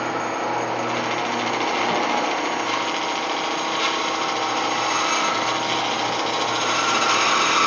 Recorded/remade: recorded